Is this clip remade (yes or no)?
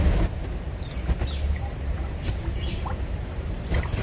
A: yes